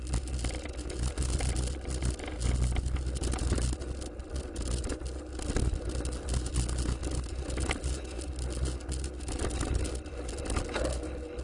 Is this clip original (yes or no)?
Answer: yes